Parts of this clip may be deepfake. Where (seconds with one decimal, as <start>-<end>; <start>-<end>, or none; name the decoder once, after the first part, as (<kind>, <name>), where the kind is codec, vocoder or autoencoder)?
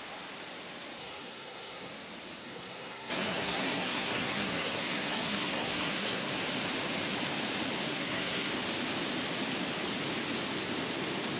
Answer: 1.0-1.9 (codec, SNAC); 2.4-6.3; 7.9-8.5